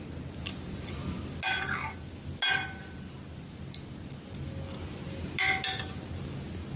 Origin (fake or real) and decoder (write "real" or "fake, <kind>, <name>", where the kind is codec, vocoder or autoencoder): real